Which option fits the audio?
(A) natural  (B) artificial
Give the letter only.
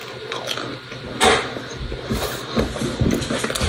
A